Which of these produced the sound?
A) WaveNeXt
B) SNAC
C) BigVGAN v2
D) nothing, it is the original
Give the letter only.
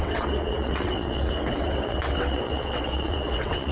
A